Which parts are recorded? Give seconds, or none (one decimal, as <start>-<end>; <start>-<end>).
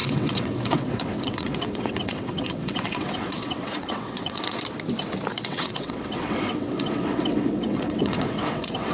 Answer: 4.6-5.3